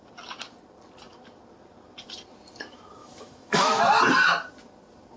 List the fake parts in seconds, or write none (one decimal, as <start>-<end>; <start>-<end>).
3.0-3.8